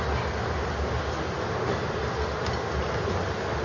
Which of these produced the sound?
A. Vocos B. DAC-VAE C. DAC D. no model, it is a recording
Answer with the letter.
D